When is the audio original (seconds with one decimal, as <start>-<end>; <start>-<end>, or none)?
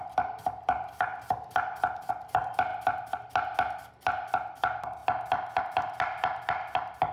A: 2.7-3.9; 5.0-5.6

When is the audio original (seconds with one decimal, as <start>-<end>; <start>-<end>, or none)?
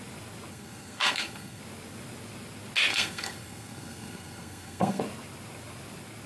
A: 0.0-0.5; 1.6-2.9; 5.0-6.3